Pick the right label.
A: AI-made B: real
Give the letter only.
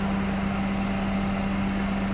B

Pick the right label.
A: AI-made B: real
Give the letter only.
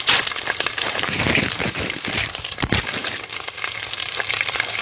A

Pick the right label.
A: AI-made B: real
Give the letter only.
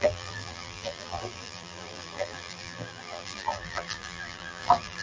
A